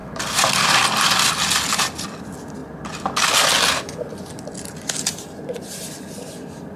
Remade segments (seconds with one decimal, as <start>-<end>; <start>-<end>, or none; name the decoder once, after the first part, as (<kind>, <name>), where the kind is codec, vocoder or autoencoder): none